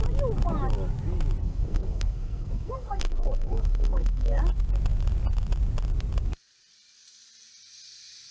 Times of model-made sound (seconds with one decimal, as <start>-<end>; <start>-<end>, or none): 1.4-4.4